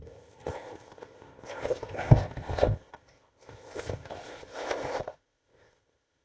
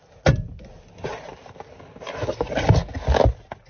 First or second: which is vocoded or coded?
first